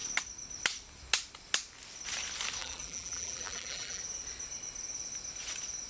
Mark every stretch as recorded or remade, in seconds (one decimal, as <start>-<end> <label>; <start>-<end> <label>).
0.0-2.6 recorded; 2.6-4.0 remade; 4.0-5.9 recorded